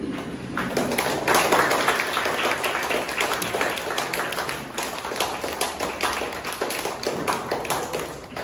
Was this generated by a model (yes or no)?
no